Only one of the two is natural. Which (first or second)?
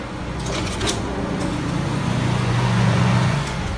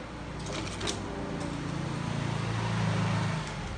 second